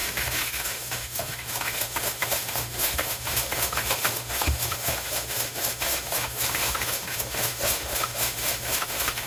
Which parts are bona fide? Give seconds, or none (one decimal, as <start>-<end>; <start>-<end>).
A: none